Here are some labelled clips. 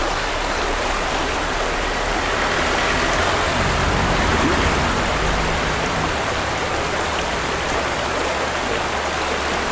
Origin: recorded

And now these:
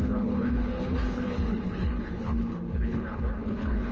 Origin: remade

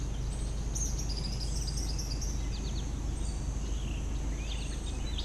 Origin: recorded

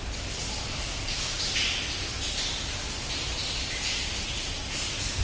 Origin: recorded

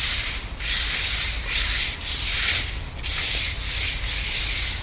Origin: recorded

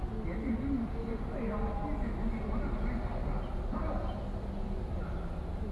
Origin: recorded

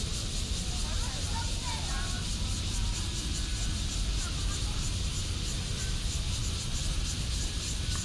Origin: recorded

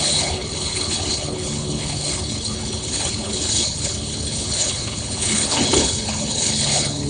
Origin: remade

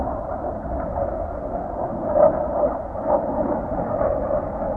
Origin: recorded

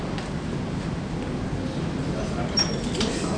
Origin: recorded